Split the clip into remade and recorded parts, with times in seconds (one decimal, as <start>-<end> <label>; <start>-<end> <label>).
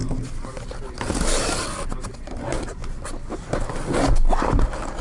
0.0-5.0 recorded